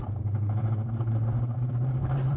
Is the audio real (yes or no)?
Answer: no